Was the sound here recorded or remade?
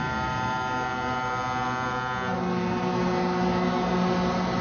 recorded